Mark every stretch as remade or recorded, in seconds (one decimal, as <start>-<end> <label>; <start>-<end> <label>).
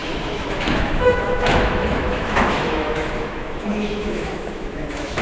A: 0.0-5.2 remade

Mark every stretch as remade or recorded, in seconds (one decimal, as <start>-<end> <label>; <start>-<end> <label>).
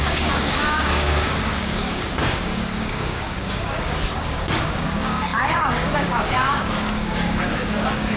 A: 0.0-8.2 remade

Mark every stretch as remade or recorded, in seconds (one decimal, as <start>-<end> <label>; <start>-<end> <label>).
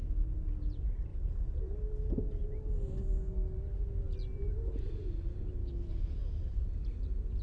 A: 0.0-5.6 recorded; 5.6-6.2 remade; 6.2-7.4 recorded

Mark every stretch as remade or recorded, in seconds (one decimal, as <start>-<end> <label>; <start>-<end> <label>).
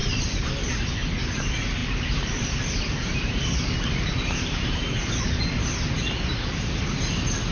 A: 0.0-0.7 remade; 0.7-1.8 recorded; 1.8-5.2 remade; 5.2-6.3 recorded; 6.3-7.0 remade; 7.0-7.5 recorded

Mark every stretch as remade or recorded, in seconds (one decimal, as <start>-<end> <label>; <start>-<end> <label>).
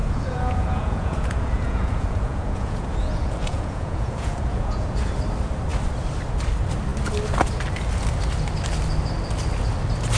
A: 0.0-5.1 remade; 5.1-10.2 recorded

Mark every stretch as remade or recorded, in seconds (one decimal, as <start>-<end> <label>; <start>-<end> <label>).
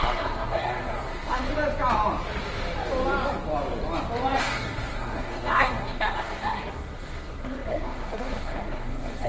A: 0.0-1.5 remade; 1.5-4.4 recorded; 4.4-9.3 remade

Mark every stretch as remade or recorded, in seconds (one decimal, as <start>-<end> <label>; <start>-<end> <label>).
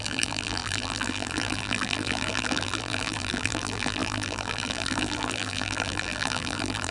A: 0.0-6.9 remade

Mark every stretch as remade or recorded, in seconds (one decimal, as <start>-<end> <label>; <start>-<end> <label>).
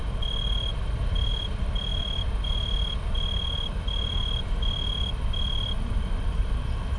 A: 0.0-7.0 recorded